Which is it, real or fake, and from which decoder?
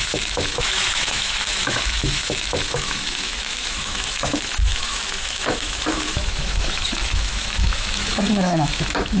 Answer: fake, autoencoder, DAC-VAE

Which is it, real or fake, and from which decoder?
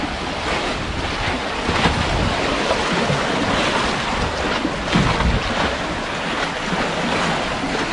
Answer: real